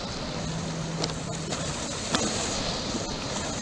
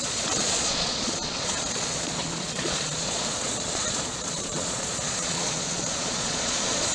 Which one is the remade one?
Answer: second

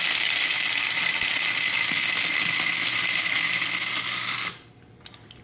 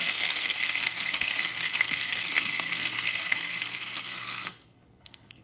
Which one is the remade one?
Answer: second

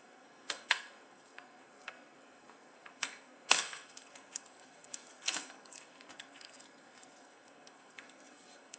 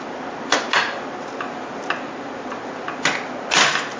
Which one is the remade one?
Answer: first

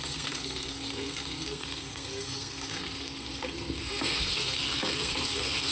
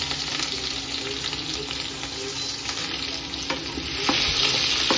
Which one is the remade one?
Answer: first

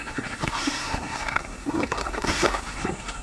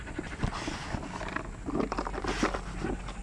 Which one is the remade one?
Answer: first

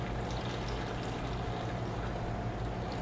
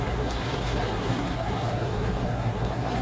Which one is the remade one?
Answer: second